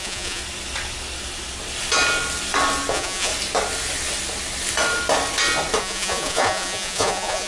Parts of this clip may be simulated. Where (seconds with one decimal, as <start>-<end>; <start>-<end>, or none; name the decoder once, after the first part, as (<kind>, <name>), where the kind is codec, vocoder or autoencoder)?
0.0-0.4 (vocoder, Vocos); 2.9-3.3; 5.8-7.5